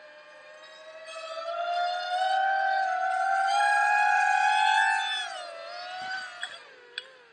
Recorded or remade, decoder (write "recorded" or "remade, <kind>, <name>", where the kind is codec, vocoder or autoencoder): recorded